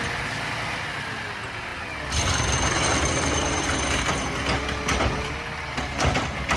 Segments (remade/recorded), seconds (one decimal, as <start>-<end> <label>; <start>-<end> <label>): 0.0-6.6 recorded